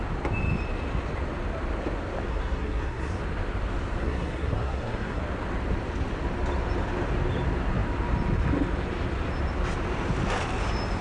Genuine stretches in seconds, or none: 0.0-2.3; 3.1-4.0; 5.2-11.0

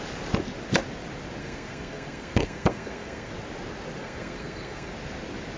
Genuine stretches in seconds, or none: 0.0-1.4; 3.3-4.0; 4.9-5.6